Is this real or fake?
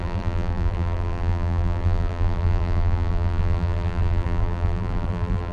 fake